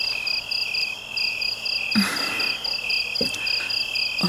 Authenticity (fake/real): real